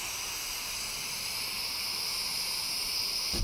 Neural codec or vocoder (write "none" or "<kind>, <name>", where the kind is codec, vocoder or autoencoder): none